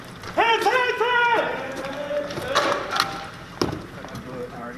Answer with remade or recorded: recorded